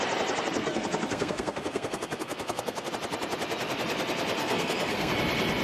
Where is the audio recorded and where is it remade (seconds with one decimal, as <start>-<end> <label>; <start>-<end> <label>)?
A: 0.0-0.6 recorded; 0.6-2.9 remade; 2.9-4.4 recorded; 4.4-5.1 remade; 5.1-5.6 recorded